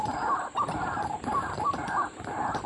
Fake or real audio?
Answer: real